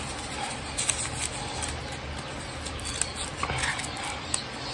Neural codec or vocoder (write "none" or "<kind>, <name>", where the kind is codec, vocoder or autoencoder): none